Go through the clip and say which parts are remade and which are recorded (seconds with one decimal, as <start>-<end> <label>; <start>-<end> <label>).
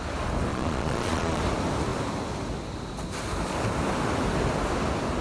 0.0-0.5 recorded; 0.5-1.4 remade; 1.4-5.2 recorded